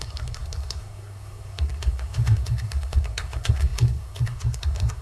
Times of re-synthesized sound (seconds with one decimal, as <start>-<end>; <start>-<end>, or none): 0.0-5.0